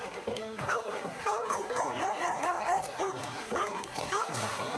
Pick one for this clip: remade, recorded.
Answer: remade